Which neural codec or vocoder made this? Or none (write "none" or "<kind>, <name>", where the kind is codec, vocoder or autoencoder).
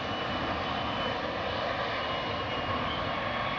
none